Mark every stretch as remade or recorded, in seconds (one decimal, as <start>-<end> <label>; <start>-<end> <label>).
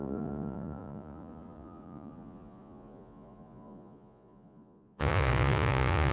0.0-6.1 remade